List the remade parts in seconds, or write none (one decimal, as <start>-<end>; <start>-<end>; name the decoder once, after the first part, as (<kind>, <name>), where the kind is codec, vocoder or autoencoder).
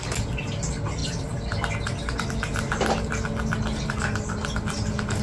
none